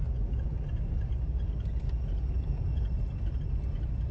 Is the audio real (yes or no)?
yes